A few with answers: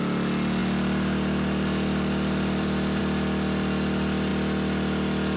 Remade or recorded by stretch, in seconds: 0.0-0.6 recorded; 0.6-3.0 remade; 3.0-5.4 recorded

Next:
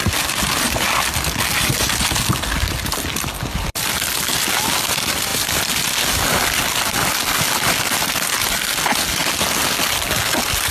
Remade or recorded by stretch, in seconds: 0.0-10.7 recorded